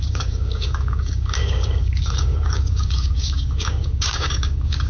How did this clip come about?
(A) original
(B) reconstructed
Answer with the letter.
B